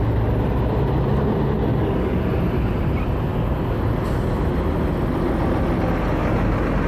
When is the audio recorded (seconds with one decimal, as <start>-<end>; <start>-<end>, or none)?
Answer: 0.0-1.7; 2.2-6.9